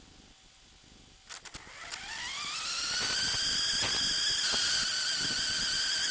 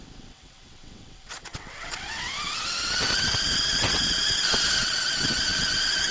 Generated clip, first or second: second